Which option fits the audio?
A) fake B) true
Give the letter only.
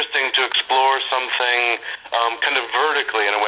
B